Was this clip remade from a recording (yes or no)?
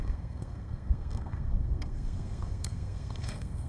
yes